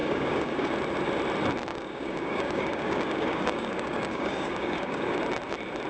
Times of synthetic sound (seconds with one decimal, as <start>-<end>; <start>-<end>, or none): 0.0-0.7; 1.7-5.2